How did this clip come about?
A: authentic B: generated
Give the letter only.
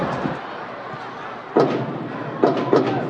A